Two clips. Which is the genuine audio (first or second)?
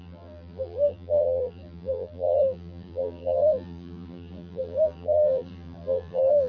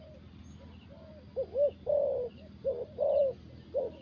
second